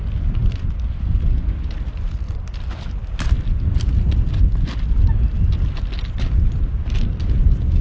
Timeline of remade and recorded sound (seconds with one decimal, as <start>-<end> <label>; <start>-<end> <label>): 0.0-7.8 recorded